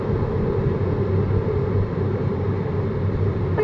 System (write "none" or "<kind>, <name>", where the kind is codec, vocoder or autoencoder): none